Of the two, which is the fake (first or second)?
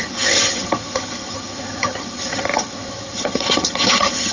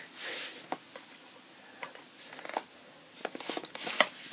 first